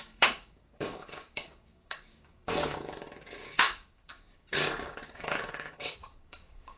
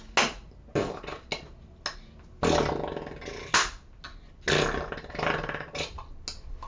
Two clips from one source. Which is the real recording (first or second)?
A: second